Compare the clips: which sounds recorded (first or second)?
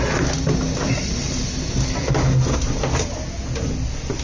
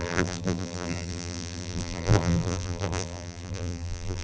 first